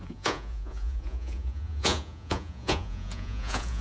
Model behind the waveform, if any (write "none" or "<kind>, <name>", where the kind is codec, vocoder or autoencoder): vocoder, Vocos